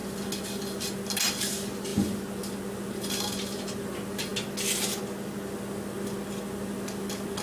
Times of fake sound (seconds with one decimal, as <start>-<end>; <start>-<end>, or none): none